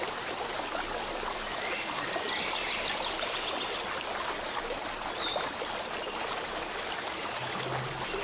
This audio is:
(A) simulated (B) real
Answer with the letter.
B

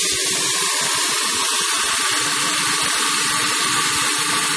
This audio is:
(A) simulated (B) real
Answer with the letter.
B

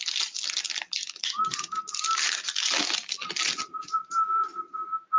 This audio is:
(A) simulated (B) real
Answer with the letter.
B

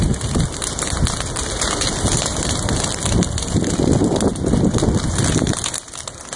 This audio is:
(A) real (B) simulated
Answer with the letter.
A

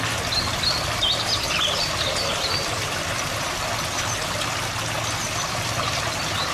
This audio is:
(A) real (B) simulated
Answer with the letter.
A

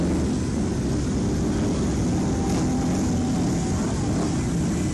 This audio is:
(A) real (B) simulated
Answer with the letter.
A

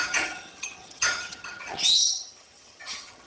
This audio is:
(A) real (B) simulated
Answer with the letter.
B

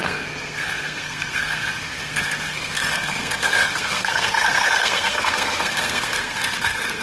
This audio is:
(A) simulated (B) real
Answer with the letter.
A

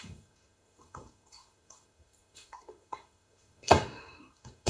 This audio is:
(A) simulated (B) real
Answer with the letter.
A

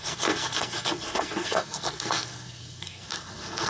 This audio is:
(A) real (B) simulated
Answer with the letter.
B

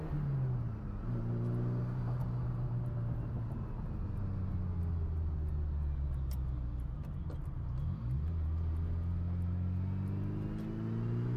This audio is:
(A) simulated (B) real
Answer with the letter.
B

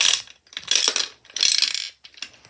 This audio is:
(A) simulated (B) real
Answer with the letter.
B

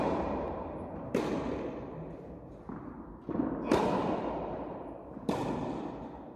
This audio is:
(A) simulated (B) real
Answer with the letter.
B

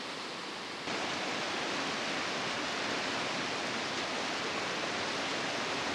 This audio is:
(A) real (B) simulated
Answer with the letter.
A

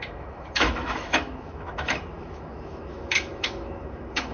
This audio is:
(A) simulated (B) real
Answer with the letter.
A